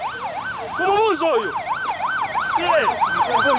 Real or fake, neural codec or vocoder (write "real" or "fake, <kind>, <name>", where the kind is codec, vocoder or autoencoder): real